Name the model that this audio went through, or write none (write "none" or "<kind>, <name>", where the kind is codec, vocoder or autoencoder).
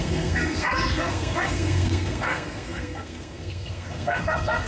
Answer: codec, SNAC